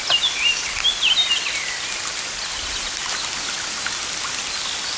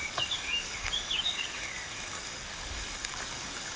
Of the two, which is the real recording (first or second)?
first